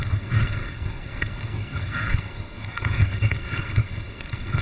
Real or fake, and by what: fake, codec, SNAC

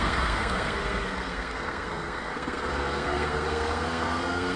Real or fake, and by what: fake, codec, SNAC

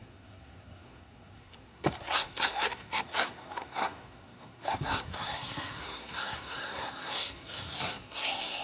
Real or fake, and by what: fake, codec, SNAC